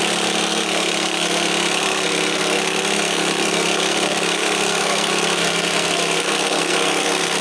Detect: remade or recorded remade